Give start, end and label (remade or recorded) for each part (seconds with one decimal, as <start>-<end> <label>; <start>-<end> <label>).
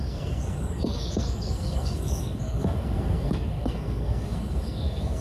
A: 0.0-5.2 remade